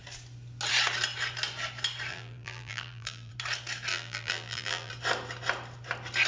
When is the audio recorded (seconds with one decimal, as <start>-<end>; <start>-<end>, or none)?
0.0-2.1; 3.3-3.9; 4.9-6.3